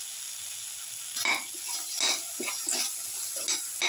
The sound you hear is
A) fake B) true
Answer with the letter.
B